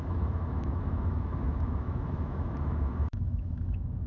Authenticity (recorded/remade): remade